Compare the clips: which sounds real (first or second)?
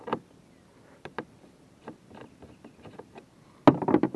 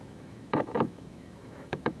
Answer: first